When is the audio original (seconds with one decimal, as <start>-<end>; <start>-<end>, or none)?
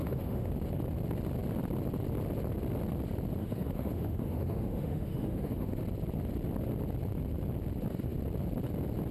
0.5-3.4; 5.8-9.1